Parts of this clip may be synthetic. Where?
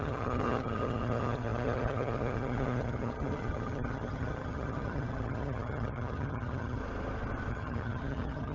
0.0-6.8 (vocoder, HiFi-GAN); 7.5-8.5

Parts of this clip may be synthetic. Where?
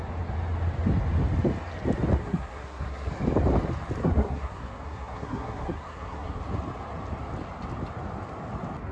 2.2-3.1 (codec, SNAC); 4.0-6.4